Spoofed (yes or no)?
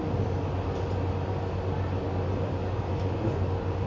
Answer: no